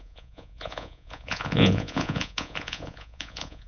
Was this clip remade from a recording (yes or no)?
yes